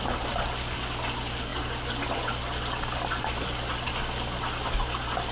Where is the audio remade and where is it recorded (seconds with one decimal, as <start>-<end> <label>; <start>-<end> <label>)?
0.0-5.3 recorded